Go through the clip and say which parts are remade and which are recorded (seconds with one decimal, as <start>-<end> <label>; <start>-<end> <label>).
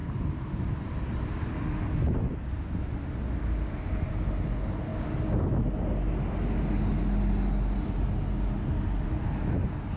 0.0-10.0 recorded